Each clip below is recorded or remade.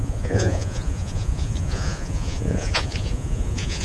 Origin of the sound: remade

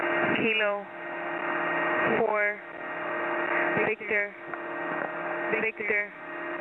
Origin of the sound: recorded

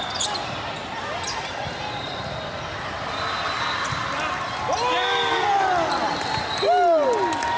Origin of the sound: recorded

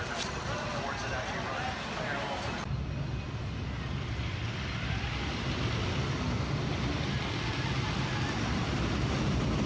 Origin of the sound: recorded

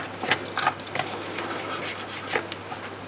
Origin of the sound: recorded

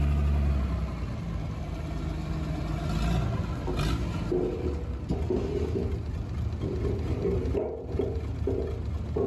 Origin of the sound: recorded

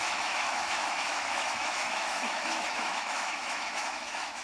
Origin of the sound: remade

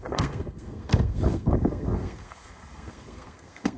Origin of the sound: remade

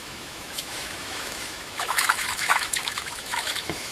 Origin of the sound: remade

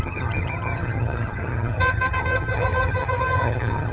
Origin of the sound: remade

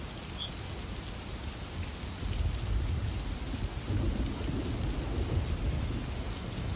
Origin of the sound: recorded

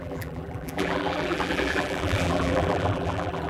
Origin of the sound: remade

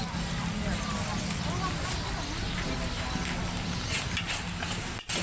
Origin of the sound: recorded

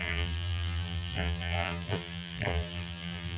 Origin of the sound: remade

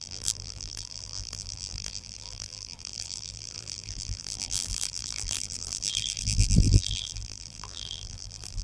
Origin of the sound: remade